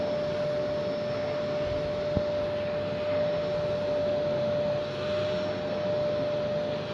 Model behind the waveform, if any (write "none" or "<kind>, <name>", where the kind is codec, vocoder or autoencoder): none